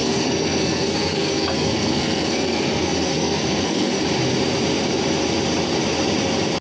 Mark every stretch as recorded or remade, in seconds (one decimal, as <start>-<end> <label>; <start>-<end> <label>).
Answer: 0.0-4.0 remade; 4.0-6.6 recorded